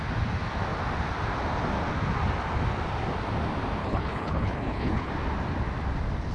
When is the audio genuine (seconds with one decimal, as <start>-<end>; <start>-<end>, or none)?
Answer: 0.0-3.8; 5.1-6.3

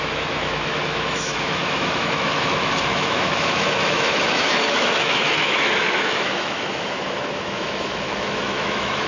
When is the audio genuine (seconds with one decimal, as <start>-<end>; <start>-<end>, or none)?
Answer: none

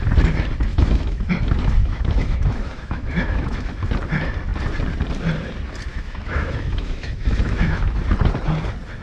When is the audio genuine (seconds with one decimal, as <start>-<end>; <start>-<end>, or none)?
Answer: 0.0-0.7; 1.3-1.8; 3.8-5.9; 8.0-9.0

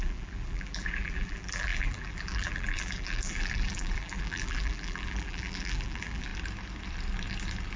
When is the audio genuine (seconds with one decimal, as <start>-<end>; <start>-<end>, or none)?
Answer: 6.3-7.8

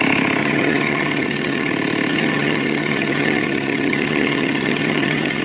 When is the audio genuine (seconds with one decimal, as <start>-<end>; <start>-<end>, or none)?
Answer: 0.0-0.4; 1.7-2.1

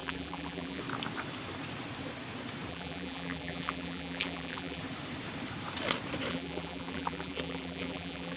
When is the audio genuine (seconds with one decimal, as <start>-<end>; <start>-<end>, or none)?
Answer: 0.8-2.7; 4.8-6.3

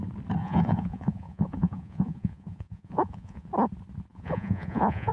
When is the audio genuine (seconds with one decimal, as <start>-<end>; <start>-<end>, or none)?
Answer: 0.0-0.4; 3.5-4.1

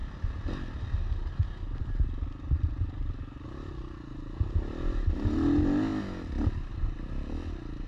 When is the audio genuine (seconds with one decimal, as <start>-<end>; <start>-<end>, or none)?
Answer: 0.0-5.9; 6.7-7.9